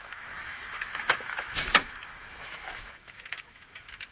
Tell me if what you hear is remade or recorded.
remade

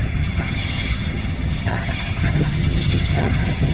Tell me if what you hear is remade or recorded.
remade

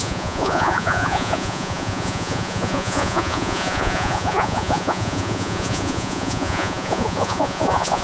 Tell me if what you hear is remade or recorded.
remade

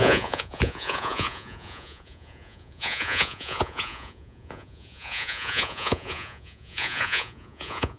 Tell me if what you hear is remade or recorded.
remade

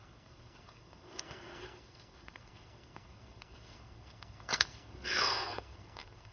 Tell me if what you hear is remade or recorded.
remade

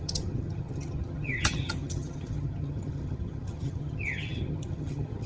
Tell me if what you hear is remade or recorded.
remade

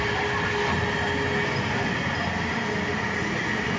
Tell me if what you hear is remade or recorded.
recorded